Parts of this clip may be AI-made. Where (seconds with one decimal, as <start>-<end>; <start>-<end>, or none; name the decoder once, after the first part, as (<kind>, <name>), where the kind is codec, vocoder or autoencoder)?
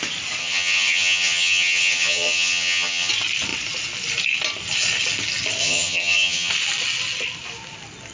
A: 0.4-3.1 (vocoder, HiFi-GAN); 5.6-6.5